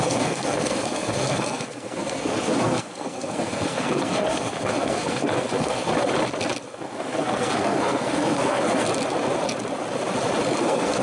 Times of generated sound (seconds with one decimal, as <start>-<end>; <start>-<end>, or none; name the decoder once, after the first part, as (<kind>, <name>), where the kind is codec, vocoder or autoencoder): 0.0-5.9 (codec, SNAC); 6.7-8.9; 10.6-11.0